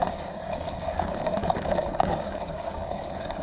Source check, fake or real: fake